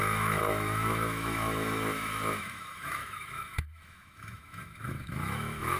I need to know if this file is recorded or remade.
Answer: remade